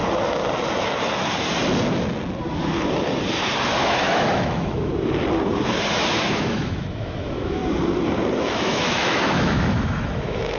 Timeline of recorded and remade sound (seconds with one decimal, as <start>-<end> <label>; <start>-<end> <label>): 0.0-3.7 recorded; 3.7-4.9 remade; 4.9-5.9 recorded; 5.9-7.6 remade; 7.6-8.4 recorded; 8.4-10.6 remade